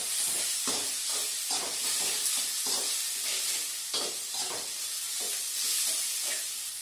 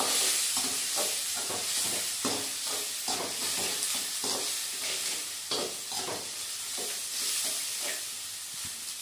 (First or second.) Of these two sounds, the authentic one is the second